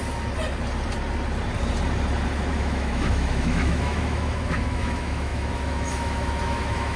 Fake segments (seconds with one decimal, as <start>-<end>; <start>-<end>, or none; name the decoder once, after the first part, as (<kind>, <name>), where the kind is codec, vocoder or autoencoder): 2.5-7.0 (autoencoder, DAC-VAE)